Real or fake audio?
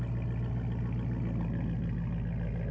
real